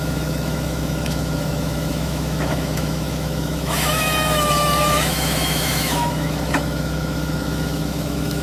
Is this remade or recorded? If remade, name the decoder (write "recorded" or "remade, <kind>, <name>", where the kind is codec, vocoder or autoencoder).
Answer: remade, autoencoder, DAC-VAE